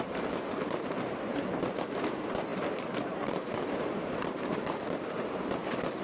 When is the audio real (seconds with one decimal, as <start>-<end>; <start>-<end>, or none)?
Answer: none